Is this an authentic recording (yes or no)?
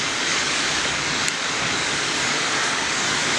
no